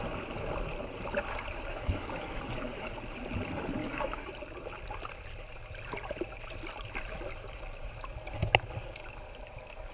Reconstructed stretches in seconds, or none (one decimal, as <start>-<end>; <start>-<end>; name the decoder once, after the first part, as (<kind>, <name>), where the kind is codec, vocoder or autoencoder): 1.7-2.9 (codec, DAC); 3.8-4.3